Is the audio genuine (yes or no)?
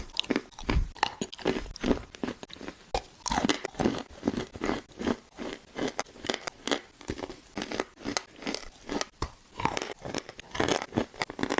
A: yes